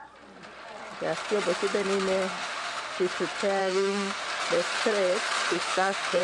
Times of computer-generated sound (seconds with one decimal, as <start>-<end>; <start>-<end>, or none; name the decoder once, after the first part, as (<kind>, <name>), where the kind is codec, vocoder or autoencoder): 2.4-3.0 (autoencoder, DAC-VAE); 3.6-4.2; 5.5-6.2